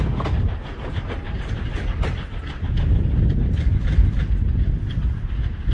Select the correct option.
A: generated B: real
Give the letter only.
B